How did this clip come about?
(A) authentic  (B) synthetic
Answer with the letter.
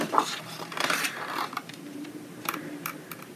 B